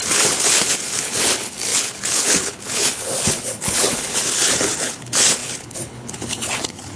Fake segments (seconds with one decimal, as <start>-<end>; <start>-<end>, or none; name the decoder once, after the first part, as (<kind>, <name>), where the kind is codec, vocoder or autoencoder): 0.0-7.0 (codec, HILCodec)